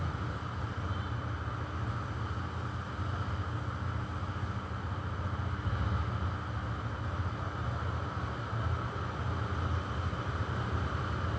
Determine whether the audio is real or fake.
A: real